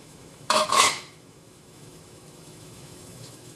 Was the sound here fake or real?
fake